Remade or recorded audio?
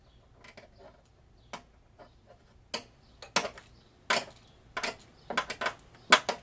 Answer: recorded